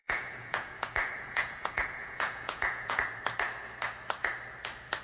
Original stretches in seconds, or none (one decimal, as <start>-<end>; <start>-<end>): 3.0-5.0